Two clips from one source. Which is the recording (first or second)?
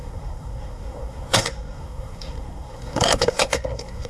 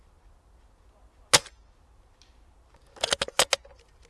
second